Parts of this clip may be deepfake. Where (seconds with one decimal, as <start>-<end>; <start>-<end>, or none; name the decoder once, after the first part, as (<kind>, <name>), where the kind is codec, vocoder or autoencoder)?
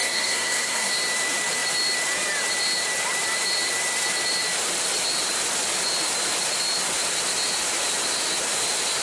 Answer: 0.0-0.9 (codec, SNAC)